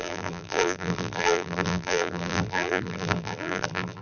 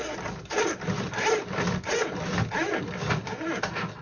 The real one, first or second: second